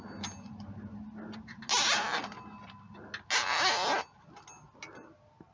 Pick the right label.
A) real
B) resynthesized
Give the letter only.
A